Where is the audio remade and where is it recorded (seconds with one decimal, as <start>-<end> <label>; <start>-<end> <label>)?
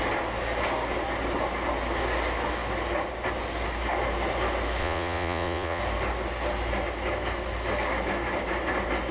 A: 0.0-4.8 recorded; 4.8-5.8 remade; 5.8-9.1 recorded